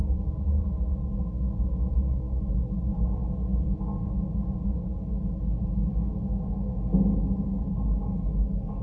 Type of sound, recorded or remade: recorded